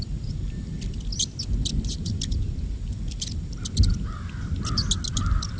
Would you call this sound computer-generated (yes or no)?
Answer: no